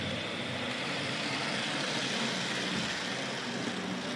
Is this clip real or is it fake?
real